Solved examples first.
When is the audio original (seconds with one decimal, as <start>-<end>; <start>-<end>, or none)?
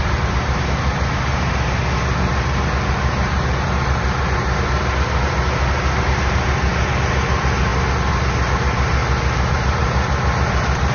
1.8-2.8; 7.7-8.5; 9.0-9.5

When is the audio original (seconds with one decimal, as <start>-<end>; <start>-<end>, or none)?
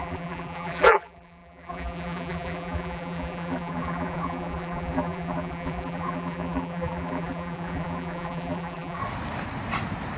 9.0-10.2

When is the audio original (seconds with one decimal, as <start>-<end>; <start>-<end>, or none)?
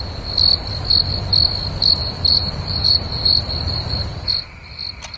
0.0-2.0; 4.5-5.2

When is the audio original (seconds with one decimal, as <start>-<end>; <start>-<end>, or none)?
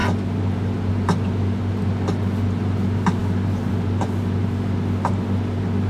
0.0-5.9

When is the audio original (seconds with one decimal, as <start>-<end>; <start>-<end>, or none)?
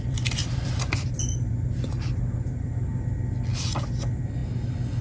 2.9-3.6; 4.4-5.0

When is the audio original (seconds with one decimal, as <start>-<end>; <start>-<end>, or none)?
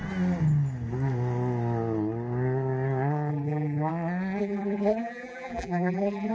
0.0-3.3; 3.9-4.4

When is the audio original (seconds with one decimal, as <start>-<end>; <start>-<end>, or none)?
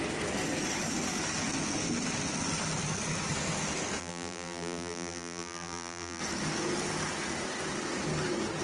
0.0-4.0; 6.2-8.6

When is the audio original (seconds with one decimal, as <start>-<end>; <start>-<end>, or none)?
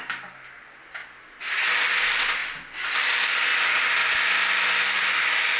0.0-3.5; 4.2-5.6